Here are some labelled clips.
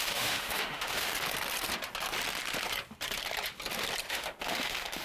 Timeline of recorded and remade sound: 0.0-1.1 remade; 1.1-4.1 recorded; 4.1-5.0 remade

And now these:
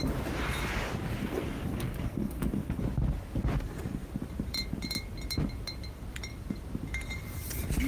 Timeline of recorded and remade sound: 0.0-1.2 recorded; 1.2-2.8 remade; 2.8-7.9 recorded

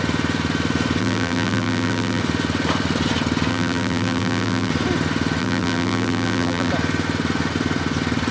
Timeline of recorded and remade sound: 0.0-1.0 recorded; 1.0-2.2 remade; 2.2-3.5 recorded; 3.5-4.7 remade; 4.7-5.4 recorded; 5.4-6.7 remade; 6.7-8.3 recorded

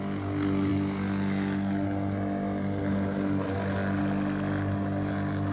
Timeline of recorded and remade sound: 0.0-5.5 recorded

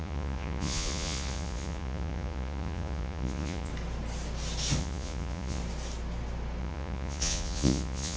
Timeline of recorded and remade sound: 0.0-3.7 remade; 3.7-4.8 recorded; 4.8-5.6 remade; 5.6-6.6 recorded; 6.6-8.2 remade

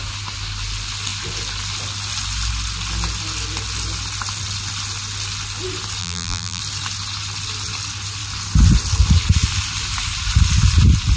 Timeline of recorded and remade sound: 0.0-6.0 recorded; 6.0-6.6 remade; 6.6-11.2 recorded

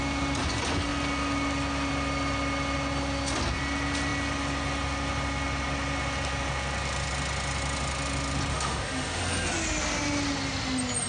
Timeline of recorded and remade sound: 0.0-8.5 recorded; 8.5-9.2 remade; 9.2-11.1 recorded